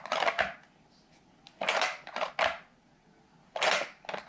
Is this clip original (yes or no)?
yes